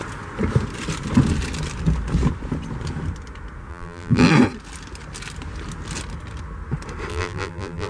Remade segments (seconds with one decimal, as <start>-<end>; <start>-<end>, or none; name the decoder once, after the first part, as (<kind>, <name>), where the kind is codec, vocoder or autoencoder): 3.7-4.3 (vocoder, BigVGAN v2); 7.1-7.9